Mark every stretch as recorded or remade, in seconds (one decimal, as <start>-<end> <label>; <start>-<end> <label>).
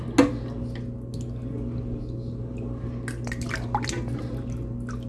0.0-5.1 recorded